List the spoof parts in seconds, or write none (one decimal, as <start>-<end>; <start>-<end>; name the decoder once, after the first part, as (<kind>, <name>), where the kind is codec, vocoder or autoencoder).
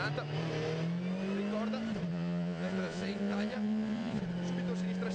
2.1-4.2 (vocoder, Vocos)